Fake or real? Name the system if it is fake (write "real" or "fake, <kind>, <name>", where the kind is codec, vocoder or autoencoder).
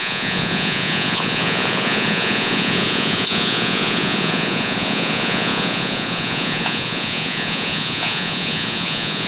fake, vocoder, Vocos